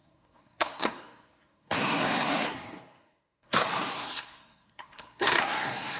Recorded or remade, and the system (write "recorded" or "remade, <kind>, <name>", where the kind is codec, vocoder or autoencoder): remade, codec, SNAC